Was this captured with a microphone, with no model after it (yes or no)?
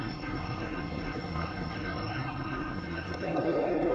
no